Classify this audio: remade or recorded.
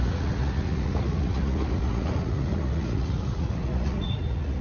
remade